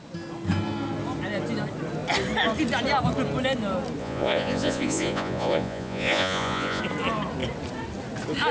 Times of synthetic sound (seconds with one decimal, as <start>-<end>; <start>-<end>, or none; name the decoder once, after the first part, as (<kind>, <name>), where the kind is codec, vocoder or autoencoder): 4.0-6.8 (vocoder, Vocos)